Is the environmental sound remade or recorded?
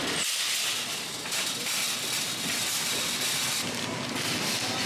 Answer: recorded